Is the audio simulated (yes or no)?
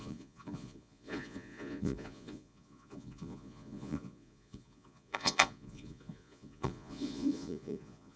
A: yes